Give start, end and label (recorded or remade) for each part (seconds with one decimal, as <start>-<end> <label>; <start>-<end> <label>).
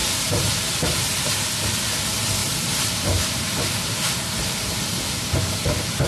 0.0-1.5 remade; 1.5-2.4 recorded; 2.4-6.1 remade